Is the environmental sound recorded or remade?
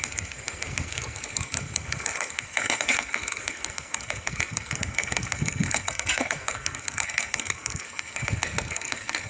remade